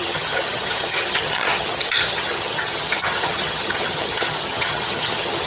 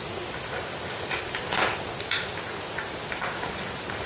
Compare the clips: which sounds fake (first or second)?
first